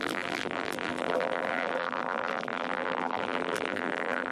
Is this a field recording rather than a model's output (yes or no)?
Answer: no